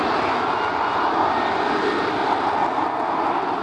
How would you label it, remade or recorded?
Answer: recorded